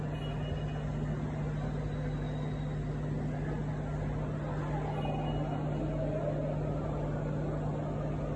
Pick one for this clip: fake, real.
real